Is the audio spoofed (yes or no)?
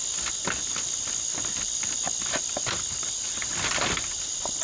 no